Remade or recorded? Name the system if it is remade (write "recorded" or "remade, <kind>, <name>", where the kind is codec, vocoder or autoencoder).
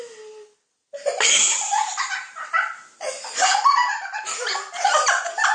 recorded